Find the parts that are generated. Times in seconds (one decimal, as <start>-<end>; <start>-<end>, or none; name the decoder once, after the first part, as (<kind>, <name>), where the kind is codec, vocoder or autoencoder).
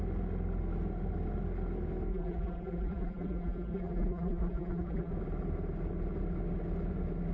2.1-5.1 (vocoder, BigVGAN v2)